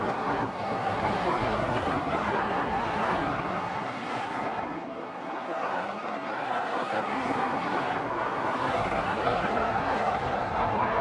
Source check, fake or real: fake